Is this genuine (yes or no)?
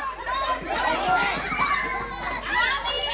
yes